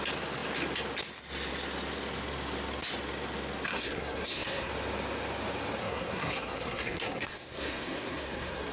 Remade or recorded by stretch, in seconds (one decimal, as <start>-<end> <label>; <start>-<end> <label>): 0.0-3.7 recorded; 3.7-4.7 remade; 4.7-5.8 recorded; 5.8-8.7 remade